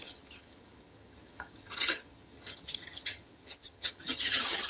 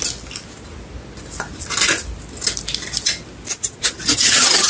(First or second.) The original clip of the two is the second